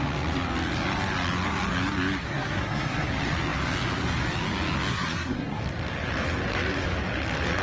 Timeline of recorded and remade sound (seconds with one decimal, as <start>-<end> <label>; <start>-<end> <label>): 0.0-2.2 recorded; 2.2-3.1 remade; 3.1-4.9 recorded; 4.9-5.6 remade; 5.6-7.6 recorded